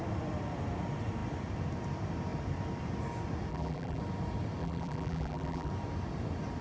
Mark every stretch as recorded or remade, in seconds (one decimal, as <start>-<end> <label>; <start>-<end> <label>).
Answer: 0.0-3.5 recorded; 3.5-4.0 remade; 4.0-4.6 recorded; 4.6-5.7 remade; 5.7-6.6 recorded

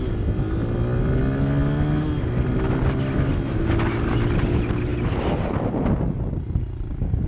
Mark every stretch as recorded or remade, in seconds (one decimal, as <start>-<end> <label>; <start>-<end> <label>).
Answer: 0.0-7.3 recorded